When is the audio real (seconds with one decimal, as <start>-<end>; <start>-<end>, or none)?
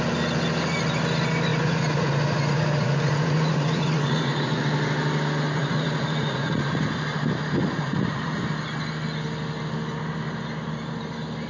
0.0-1.5; 4.6-5.6; 6.8-7.6; 8.4-11.5